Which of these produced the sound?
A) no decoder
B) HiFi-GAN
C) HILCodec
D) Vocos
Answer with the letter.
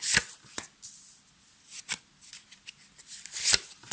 A